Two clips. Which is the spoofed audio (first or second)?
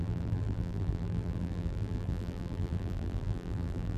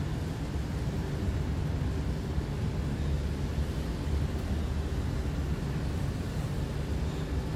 first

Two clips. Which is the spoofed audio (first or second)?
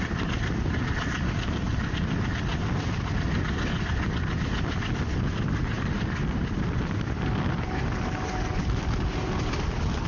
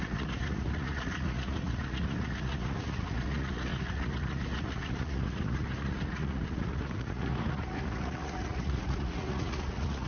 second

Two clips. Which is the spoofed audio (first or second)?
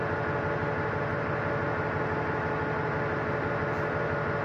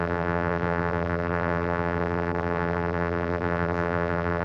second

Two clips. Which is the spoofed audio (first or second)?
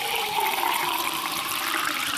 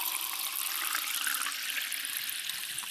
first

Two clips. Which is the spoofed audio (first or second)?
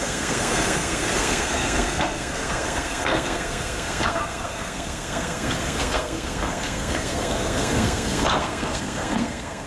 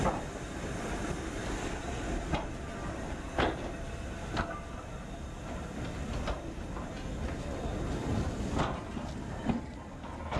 first